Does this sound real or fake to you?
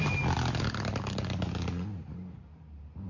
real